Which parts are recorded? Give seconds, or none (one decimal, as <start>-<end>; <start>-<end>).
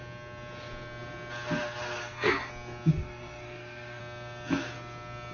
0.0-2.0; 2.5-2.9; 4.0-5.3